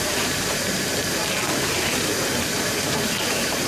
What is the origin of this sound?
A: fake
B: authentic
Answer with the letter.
A